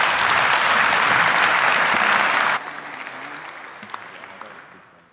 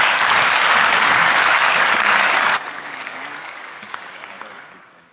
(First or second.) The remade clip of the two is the second